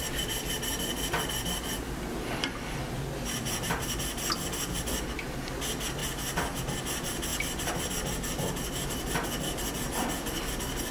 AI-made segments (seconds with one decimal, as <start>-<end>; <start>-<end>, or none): none